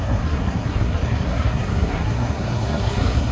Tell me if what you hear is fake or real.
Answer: fake